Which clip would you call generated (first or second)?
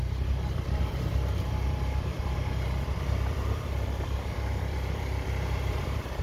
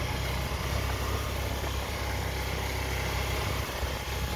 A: first